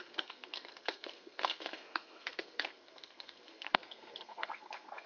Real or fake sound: fake